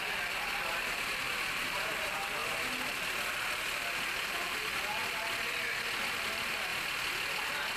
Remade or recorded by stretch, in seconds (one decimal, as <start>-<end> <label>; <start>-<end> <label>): 0.0-2.4 remade; 2.4-4.4 recorded; 4.4-5.0 remade; 5.0-6.1 recorded; 6.1-6.7 remade; 6.7-7.8 recorded

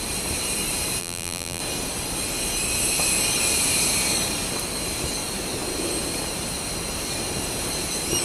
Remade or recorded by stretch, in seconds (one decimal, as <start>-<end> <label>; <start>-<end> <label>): 0.0-1.0 recorded; 1.0-1.6 remade; 1.6-8.2 recorded

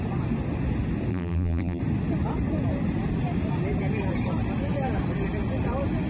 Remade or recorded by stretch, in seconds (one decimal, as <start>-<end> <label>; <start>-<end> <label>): 0.0-1.1 recorded; 1.1-1.8 remade; 1.8-6.1 recorded

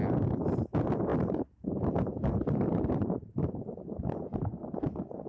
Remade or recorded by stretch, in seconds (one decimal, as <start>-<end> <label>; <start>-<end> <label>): 0.0-1.1 recorded; 1.1-4.0 remade; 4.0-5.3 recorded

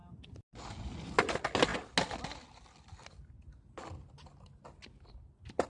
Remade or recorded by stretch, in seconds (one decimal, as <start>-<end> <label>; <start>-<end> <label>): 0.0-5.7 recorded

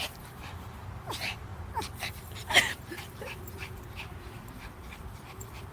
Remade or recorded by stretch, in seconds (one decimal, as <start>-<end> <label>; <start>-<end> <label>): 0.0-5.7 remade

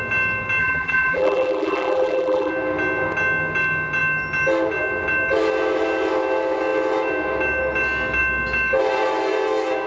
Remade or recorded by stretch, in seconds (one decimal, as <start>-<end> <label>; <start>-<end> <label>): 0.0-0.6 recorded; 0.6-2.5 remade; 2.5-9.9 recorded

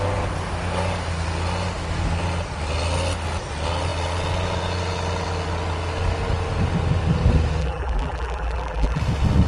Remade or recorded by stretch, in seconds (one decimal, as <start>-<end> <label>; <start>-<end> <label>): 0.0-7.6 recorded; 7.6-9.0 remade; 9.0-9.5 recorded